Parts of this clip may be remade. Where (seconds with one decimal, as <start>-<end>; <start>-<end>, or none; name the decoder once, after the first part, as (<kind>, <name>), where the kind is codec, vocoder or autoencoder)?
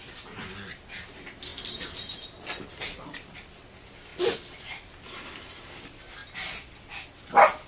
1.5-2.1 (vocoder, BigVGAN v2); 4.1-5.0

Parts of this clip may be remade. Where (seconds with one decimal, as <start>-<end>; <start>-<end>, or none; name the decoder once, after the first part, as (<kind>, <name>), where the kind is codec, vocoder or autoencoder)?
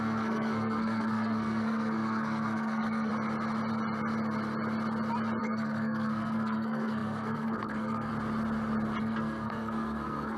0.0-3.1 (codec, SNAC); 5.4-8.1; 9.0-10.4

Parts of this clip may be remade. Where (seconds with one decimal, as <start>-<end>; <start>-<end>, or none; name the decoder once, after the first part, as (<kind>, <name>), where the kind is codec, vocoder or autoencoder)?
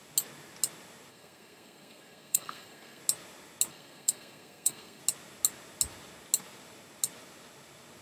1.1-3.0 (codec, SNAC); 3.7-5.0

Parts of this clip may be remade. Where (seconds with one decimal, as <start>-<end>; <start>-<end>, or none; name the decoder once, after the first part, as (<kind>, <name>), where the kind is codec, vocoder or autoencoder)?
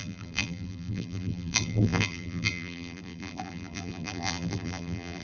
0.0-5.2 (vocoder, BigVGAN v2)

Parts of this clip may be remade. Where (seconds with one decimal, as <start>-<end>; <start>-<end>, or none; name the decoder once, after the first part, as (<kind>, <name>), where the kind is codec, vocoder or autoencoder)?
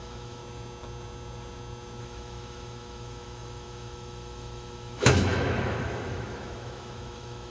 0.0-0.4 (autoencoder, DAC-VAE); 2.0-7.5